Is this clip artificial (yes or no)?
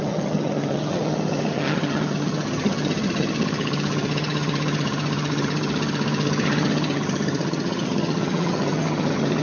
yes